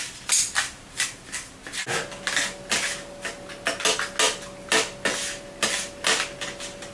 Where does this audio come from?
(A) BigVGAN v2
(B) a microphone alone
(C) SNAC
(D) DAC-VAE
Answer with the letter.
B